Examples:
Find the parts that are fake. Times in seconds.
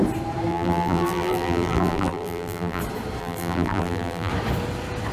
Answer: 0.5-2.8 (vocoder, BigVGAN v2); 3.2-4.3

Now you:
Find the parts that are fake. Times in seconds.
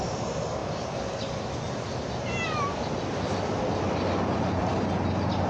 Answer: none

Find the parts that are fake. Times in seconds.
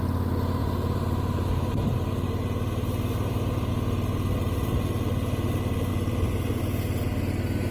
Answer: 0.6-3.7 (vocoder, BigVGAN v2); 5.9-6.6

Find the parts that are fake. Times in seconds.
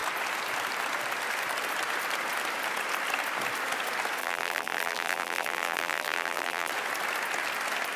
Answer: 4.2-6.7 (vocoder, BigVGAN v2)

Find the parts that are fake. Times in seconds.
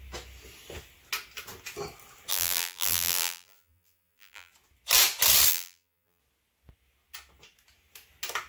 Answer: 2.3-4.5 (vocoder, BigVGAN v2); 5.5-6.2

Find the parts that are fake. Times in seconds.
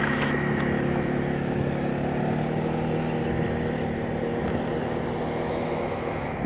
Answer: 0.0-1.9 (autoencoder, DAC-VAE); 5.5-6.5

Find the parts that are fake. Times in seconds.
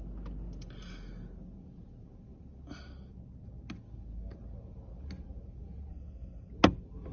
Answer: 5.9-6.5 (codec, SNAC)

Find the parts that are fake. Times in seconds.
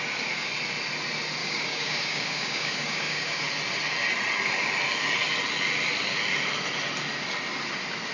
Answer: 1.4-3.4 (codec, DAC)